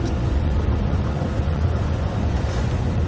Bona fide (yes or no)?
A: no